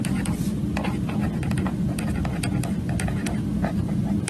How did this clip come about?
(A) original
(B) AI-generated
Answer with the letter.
A